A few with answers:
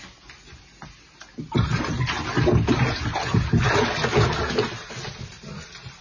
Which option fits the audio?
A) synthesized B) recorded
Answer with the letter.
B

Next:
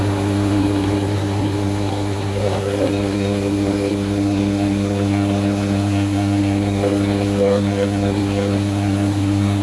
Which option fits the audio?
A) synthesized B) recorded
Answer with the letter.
A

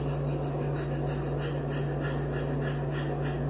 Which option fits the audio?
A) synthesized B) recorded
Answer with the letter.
B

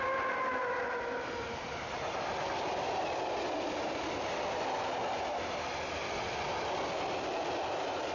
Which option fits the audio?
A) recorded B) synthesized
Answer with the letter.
A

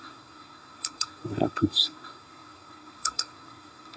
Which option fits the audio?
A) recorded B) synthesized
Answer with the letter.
B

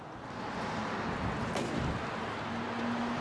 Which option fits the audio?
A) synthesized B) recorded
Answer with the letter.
B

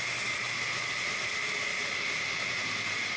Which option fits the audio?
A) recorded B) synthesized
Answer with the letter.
A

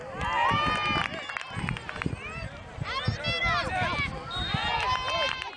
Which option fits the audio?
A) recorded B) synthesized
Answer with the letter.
A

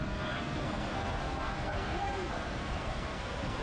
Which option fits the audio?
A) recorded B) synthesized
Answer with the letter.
B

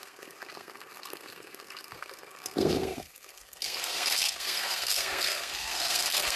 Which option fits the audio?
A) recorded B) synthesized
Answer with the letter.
B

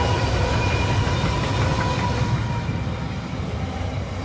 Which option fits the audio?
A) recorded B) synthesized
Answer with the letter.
A